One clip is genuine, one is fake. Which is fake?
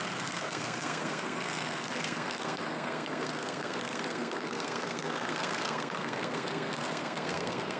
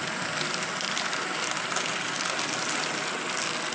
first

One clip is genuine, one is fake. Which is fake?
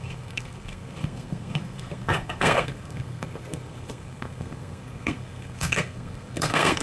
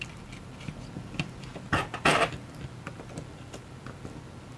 first